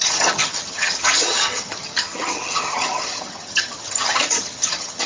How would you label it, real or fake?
fake